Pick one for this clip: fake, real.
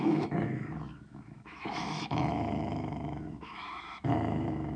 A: fake